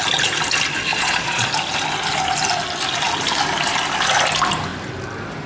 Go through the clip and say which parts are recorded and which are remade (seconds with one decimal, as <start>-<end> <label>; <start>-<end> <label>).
0.0-0.9 recorded; 0.9-1.5 remade; 1.5-5.5 recorded